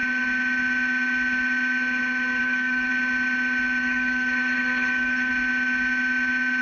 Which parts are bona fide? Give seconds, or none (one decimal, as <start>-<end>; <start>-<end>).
0.0-2.4; 2.9-3.8; 5.3-6.6